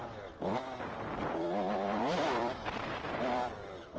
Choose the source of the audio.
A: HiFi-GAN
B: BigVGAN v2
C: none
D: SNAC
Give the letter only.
B